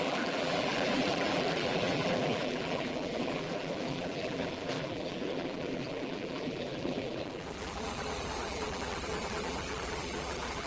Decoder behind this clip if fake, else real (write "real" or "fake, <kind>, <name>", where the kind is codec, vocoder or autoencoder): fake, vocoder, BigVGAN v2